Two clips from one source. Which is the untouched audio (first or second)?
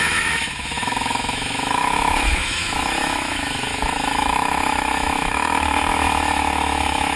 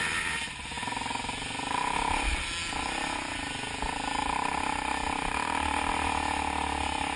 second